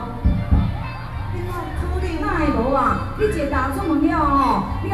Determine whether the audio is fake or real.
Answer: real